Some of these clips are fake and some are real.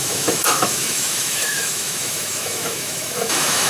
fake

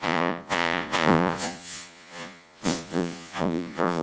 fake